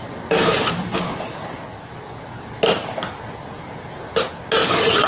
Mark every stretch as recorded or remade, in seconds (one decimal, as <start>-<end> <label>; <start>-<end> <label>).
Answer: 0.0-5.1 recorded